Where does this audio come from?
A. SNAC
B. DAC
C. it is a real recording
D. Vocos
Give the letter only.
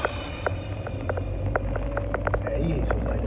C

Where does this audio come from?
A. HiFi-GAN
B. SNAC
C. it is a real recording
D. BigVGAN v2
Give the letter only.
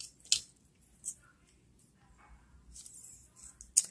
C